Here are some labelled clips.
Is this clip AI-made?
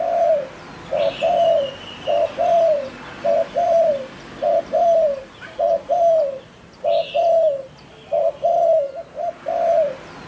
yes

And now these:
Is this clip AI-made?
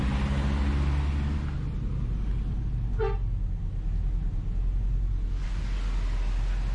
no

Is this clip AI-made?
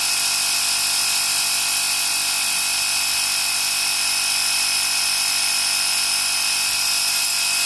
no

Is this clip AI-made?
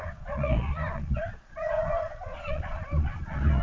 yes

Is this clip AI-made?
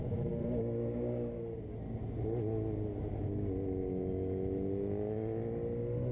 no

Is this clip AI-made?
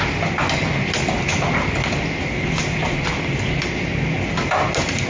no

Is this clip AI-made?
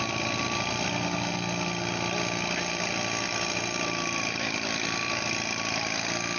no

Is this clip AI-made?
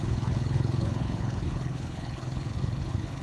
yes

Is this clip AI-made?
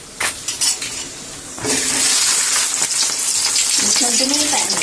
no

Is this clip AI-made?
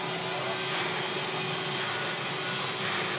no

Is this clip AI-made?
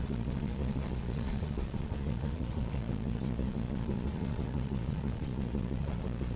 yes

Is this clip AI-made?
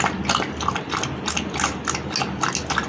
no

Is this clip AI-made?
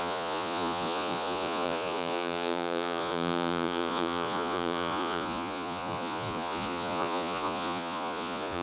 yes